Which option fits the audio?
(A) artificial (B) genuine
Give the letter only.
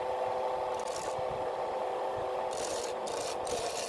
B